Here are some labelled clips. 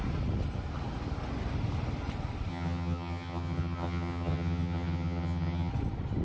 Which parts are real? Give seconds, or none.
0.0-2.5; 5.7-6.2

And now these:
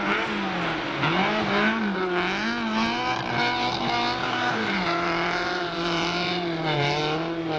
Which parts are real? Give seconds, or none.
0.0-4.2; 7.0-7.6